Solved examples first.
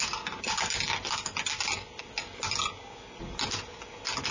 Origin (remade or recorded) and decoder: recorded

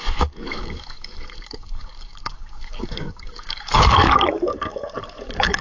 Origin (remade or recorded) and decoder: remade, codec, DAC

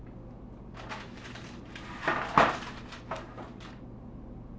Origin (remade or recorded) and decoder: recorded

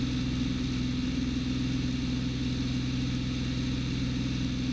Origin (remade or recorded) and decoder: recorded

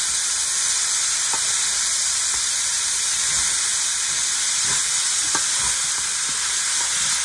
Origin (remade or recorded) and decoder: recorded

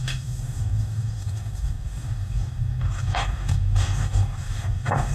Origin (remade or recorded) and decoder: remade, codec, DAC